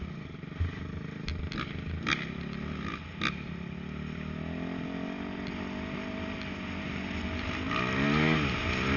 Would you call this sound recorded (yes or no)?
yes